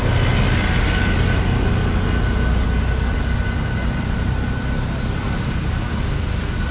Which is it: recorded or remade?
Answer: recorded